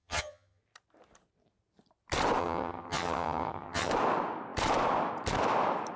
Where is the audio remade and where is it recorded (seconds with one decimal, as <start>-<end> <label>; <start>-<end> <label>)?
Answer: 0.0-0.6 remade; 0.6-2.4 recorded; 2.4-3.9 remade; 3.9-6.0 recorded